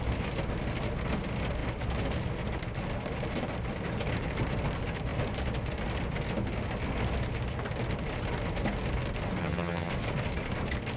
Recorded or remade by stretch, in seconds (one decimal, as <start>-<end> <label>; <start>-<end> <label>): 0.0-9.4 recorded; 9.4-9.9 remade; 9.9-11.0 recorded